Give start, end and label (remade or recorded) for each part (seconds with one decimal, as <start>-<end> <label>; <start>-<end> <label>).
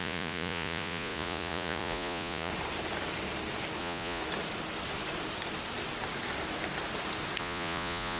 0.0-2.5 remade; 2.5-3.8 recorded; 3.8-4.2 remade; 4.2-7.4 recorded; 7.4-8.2 remade